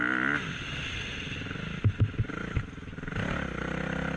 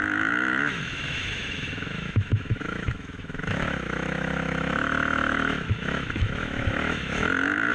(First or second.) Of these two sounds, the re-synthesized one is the second